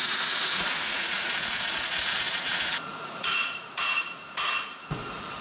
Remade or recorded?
remade